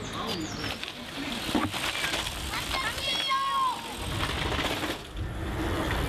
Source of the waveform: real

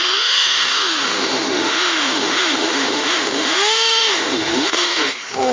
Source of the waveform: fake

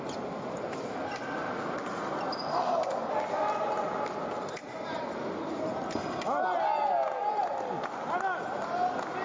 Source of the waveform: real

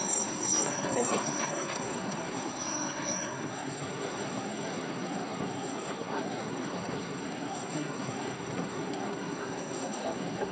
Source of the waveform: fake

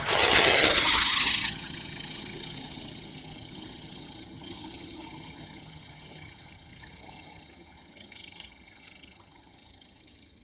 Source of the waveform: fake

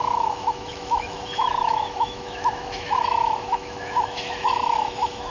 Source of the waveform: fake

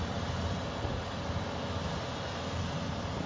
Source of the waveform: real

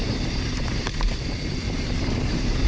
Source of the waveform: fake